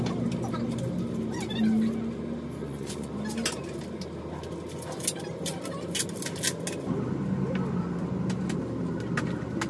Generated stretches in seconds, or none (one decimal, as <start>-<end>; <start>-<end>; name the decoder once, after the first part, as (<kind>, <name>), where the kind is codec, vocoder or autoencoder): 2.6-3.1 (vocoder, Vocos)